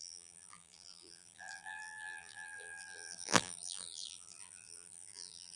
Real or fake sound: fake